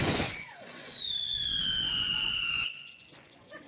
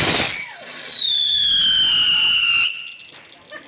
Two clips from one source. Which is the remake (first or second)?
first